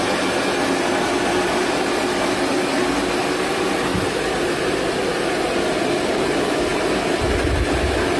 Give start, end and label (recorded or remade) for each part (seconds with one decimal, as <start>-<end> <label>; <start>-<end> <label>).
0.0-8.2 recorded